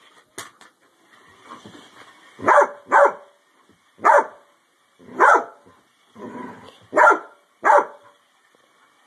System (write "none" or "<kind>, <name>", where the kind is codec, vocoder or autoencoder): none